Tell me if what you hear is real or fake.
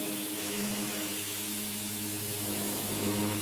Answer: fake